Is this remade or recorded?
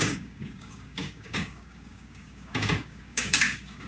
remade